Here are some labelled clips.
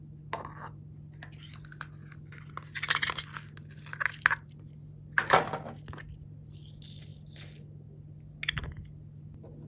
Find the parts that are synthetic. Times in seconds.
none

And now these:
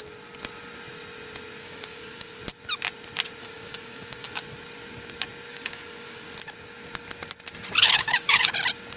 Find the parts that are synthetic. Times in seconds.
1.6-2.4 (codec, DAC); 3.4-4.3; 5.5-6.3; 7.8-8.5

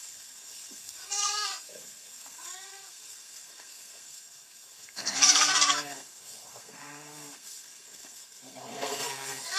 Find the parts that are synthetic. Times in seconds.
0.0-9.6 (codec, SNAC)

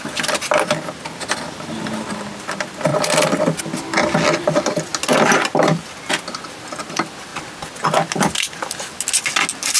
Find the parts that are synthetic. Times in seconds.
2.9-3.6 (vocoder, BigVGAN v2)

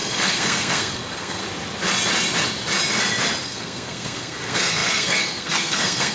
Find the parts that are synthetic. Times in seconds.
0.0-1.4 (codec, SNAC); 3.4-6.1

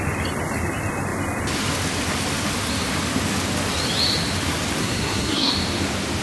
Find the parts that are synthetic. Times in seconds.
4.8-5.5 (codec, SNAC)

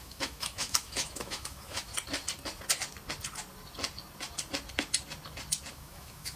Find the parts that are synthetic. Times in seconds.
0.0-1.9 (autoencoder, DAC-VAE); 5.7-6.4